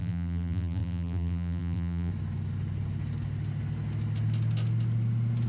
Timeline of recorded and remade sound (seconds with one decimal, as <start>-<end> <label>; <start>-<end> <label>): 0.0-2.1 remade; 2.1-5.5 recorded